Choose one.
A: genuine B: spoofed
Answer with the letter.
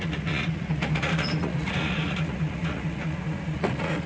B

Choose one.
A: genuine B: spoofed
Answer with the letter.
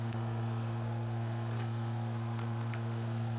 B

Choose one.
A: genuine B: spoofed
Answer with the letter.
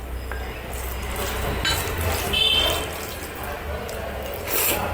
A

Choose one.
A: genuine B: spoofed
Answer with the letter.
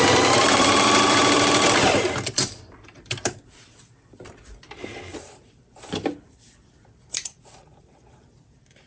B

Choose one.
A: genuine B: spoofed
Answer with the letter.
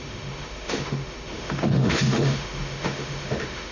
B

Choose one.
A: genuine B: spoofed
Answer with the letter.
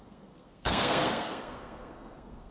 B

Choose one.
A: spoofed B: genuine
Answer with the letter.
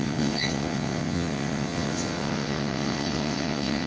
A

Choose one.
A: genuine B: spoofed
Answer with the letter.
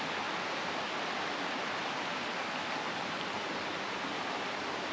A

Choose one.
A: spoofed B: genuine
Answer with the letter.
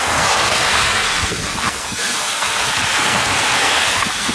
A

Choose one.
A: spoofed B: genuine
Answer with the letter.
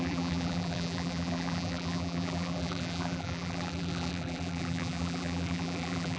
A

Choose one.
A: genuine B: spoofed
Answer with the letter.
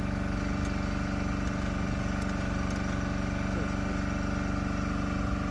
A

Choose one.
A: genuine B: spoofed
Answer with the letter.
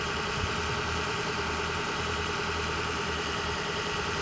B